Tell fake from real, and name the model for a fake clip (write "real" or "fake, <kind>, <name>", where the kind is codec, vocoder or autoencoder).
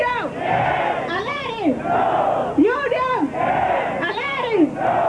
real